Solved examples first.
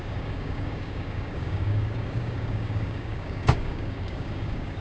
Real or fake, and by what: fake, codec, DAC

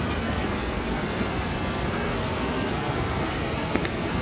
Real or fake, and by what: fake, codec, SNAC